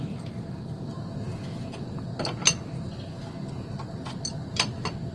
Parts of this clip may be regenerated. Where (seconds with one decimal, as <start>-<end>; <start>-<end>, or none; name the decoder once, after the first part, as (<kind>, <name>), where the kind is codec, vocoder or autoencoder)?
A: none